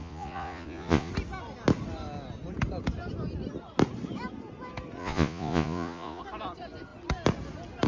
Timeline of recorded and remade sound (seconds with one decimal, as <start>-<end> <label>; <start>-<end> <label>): 0.0-1.1 remade; 1.1-5.0 recorded; 5.0-6.2 remade; 6.2-7.9 recorded

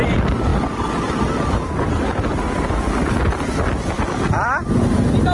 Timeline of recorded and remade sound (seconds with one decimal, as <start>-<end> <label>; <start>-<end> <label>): 0.0-5.3 recorded